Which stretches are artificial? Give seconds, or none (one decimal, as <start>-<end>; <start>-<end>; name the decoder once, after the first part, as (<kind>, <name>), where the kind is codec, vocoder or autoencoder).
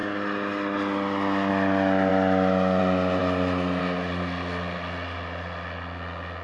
none